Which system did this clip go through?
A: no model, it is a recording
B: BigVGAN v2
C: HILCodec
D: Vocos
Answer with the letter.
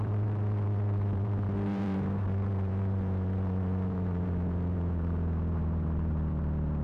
B